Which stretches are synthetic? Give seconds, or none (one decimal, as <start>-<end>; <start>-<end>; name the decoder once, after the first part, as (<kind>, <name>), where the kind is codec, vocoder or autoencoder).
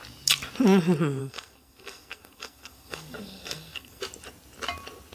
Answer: 1.2-4.0 (codec, SNAC)